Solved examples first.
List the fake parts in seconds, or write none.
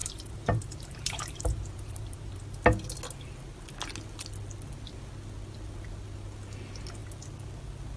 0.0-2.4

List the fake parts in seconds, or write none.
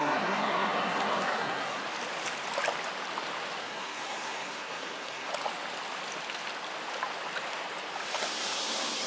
0.0-1.8; 3.6-5.3; 8.2-9.1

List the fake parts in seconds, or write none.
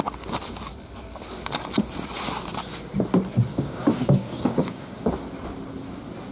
3.5-5.1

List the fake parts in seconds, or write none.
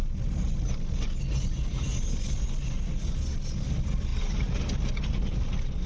none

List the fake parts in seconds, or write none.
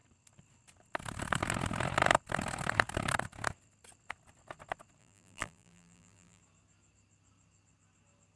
5.0-6.4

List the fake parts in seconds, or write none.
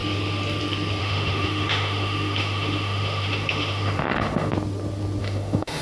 1.0-4.5; 5.2-5.8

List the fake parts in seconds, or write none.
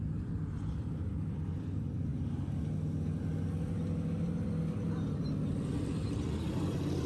0.0-2.1; 6.4-7.1